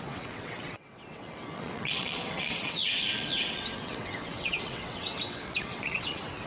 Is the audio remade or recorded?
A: remade